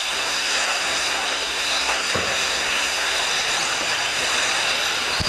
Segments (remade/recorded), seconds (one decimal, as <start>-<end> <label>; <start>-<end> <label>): 0.0-3.2 remade; 3.2-5.3 recorded